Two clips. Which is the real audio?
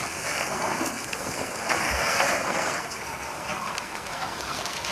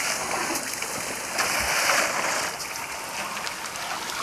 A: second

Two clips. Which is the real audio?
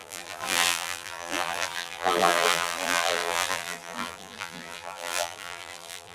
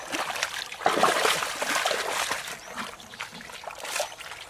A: second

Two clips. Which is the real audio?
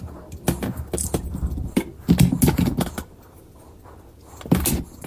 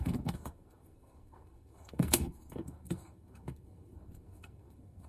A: first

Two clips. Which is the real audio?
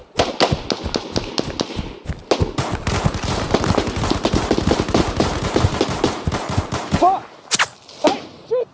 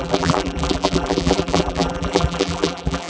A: first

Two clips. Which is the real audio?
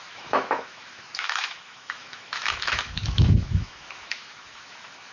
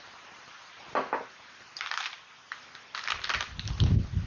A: second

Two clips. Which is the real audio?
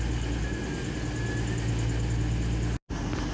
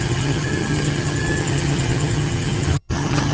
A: first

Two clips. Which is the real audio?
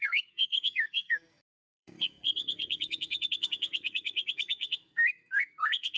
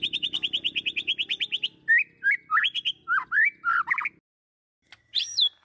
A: second